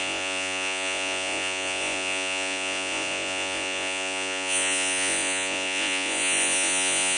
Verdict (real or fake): fake